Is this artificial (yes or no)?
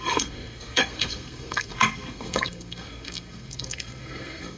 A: yes